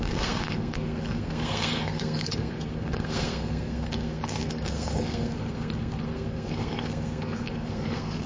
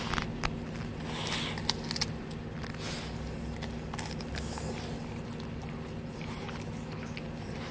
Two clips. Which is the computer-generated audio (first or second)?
first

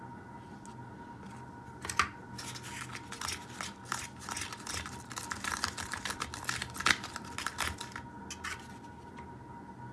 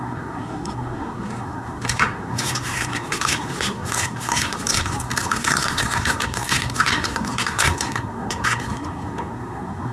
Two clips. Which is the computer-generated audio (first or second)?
second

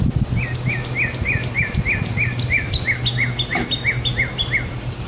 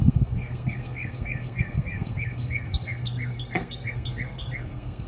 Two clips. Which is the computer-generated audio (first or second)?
second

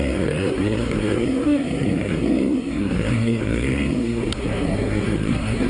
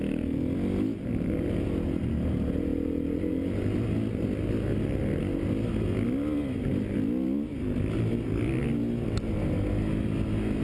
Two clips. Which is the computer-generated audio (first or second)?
first